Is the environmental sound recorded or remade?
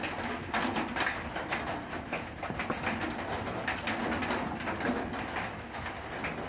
recorded